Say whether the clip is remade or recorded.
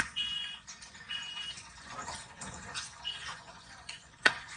remade